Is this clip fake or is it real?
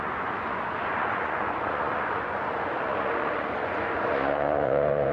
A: fake